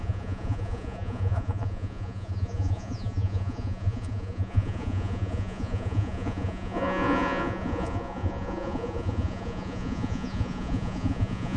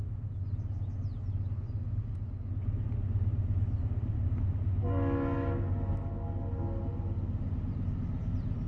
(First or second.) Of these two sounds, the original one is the second